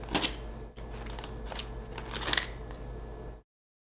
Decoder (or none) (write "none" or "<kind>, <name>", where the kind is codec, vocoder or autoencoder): none